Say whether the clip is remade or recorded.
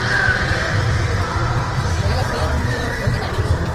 remade